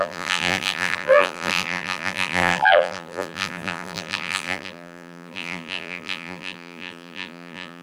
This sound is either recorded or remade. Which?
remade